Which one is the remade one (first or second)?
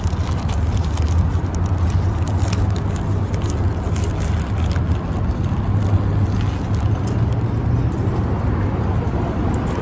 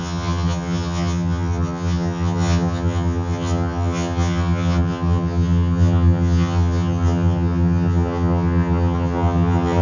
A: second